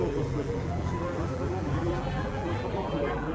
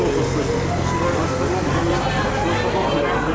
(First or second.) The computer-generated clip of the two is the first